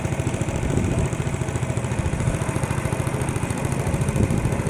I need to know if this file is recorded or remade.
remade